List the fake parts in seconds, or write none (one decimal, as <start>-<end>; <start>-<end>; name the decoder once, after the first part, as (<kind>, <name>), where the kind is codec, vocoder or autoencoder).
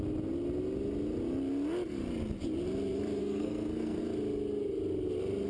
3.2-4.0 (codec, SNAC)